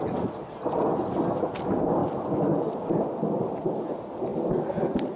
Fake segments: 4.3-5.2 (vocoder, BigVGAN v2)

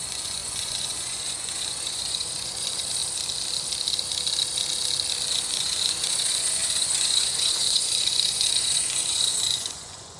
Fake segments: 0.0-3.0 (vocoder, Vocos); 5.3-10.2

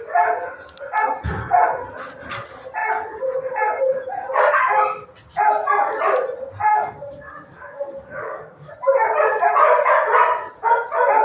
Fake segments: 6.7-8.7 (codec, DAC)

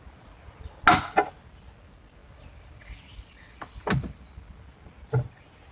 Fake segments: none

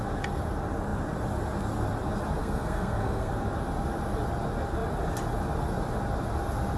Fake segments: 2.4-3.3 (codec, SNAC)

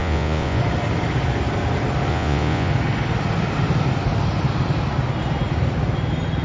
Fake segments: 0.0-0.6 (vocoder, Vocos); 2.1-2.7

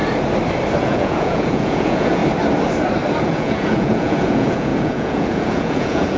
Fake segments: 0.8-2.2 (vocoder, Vocos); 3.2-6.2